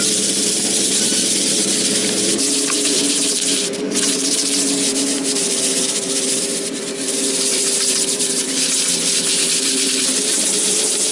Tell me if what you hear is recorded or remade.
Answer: remade